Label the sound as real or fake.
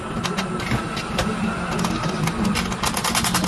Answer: real